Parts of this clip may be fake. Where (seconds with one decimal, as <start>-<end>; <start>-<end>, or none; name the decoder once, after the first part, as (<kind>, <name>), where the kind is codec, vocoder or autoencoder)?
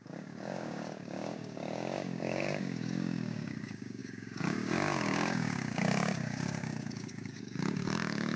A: 0.0-8.4 (codec, DAC)